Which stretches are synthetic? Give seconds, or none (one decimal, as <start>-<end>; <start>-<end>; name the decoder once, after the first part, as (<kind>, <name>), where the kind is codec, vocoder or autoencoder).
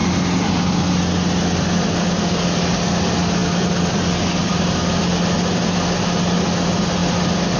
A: none